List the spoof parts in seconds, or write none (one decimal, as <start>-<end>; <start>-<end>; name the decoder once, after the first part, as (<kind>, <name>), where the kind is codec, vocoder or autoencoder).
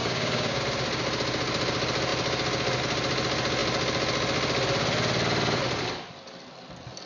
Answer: 0.0-0.6 (codec, DAC)